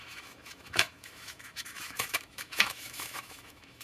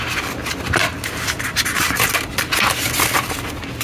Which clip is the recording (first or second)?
second